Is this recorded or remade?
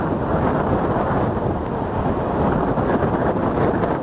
recorded